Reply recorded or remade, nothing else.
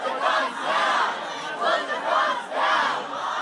recorded